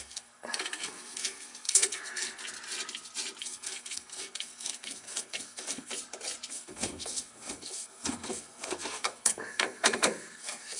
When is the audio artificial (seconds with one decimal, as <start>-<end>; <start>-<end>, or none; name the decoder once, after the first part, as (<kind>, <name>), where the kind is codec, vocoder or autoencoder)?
0.0-2.4 (codec, SNAC); 3.4-5.9; 6.5-10.8